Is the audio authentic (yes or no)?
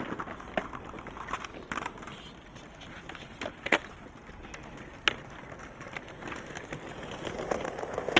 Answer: yes